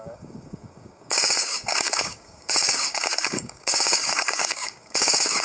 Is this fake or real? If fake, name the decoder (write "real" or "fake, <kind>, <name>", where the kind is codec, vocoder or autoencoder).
fake, codec, DAC